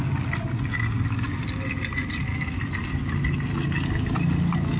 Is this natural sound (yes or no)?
yes